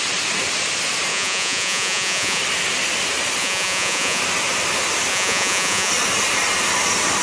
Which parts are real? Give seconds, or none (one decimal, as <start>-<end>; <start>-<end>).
0.0-1.1; 2.4-3.4; 4.2-5.1; 5.9-7.2